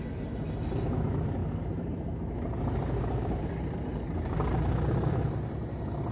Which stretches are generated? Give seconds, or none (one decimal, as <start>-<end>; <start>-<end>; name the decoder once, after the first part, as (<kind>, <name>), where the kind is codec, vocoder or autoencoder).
1.4-4.6 (vocoder, BigVGAN v2)